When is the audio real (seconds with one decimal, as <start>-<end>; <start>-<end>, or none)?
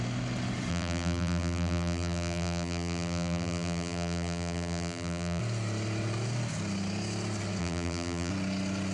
0.0-0.7; 5.4-7.6; 8.3-8.9